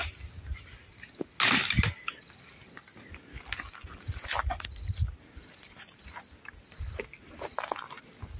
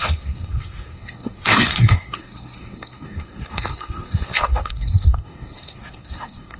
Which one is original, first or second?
first